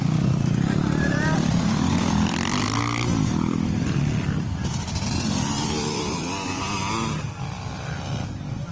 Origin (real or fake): real